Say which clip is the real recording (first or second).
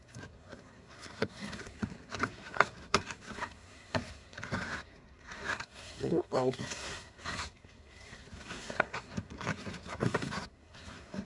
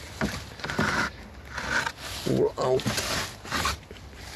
second